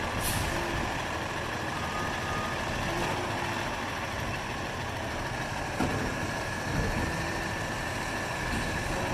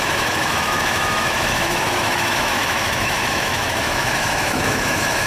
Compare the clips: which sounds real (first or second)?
first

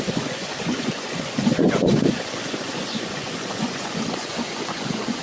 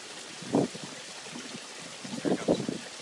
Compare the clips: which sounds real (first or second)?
second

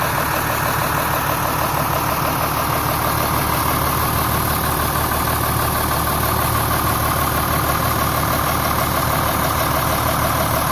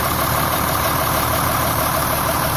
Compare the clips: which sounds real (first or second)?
first